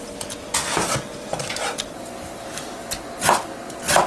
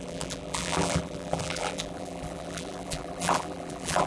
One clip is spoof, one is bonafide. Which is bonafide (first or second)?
first